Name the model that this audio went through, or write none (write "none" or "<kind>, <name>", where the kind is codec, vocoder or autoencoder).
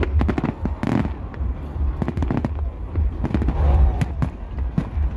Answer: none